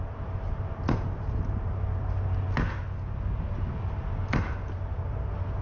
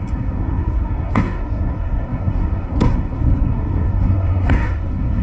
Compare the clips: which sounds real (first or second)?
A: first